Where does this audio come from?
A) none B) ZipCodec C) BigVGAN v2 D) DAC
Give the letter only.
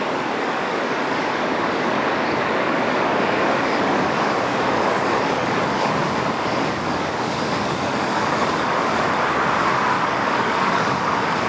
D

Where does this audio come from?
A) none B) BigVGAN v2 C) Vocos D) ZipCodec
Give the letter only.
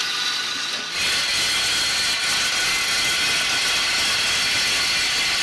A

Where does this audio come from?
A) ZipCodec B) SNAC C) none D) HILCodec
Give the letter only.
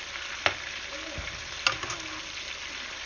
C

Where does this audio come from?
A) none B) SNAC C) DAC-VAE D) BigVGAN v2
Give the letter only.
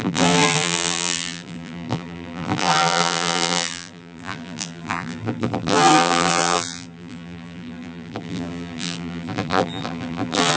D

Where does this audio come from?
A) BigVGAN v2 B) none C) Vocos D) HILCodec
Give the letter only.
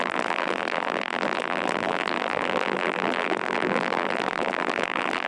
A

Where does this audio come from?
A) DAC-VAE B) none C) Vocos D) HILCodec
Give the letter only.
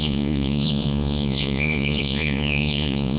C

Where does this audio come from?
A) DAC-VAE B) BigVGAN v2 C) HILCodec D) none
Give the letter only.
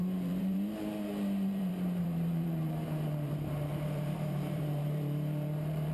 B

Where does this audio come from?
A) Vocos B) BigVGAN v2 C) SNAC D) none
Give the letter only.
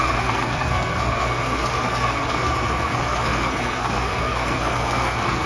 C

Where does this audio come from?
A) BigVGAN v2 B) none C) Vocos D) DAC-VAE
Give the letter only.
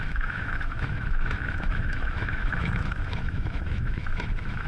D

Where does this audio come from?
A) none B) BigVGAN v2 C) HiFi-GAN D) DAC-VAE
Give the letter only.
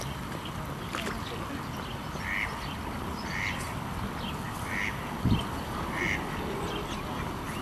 A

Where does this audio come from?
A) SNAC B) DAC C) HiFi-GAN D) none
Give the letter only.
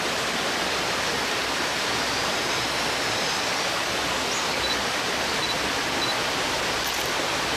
D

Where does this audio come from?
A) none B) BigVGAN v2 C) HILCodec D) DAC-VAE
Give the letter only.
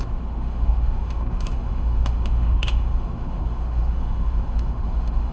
D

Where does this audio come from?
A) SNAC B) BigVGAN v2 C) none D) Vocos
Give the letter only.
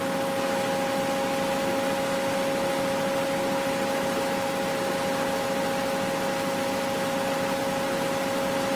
C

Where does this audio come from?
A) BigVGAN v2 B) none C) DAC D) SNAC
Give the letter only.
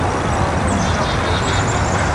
B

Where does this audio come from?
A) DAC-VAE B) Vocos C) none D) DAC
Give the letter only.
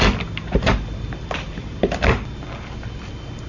C